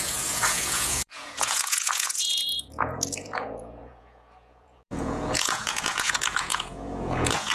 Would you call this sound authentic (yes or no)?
no